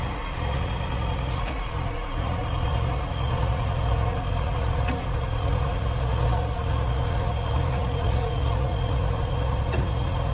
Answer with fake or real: fake